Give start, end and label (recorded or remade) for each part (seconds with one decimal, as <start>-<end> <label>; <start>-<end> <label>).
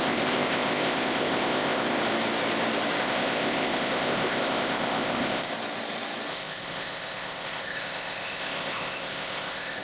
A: 0.0-2.0 remade; 2.0-3.0 recorded; 3.0-5.5 remade; 5.5-6.3 recorded; 6.3-9.8 remade